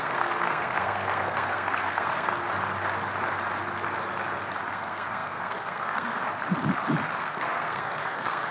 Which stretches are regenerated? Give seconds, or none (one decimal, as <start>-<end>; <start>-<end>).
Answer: 0.0-2.3; 4.7-6.2; 7.2-8.5